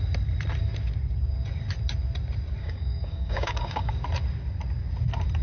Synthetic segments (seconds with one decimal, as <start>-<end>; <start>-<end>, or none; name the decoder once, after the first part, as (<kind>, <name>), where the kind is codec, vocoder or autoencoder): 2.6-3.9 (codec, DAC)